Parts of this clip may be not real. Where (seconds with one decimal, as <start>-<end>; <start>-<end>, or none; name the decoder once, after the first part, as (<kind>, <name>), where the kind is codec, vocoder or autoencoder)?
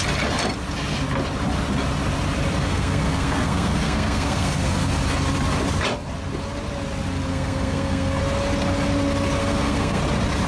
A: 2.6-4.9 (codec, SNAC); 7.3-8.2; 9.4-10.0